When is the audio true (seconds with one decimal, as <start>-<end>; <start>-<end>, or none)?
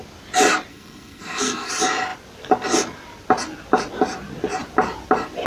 0.0-0.7; 1.7-5.5